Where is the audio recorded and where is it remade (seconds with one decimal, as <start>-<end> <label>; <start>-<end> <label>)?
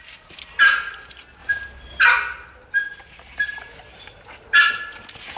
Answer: 0.0-5.4 recorded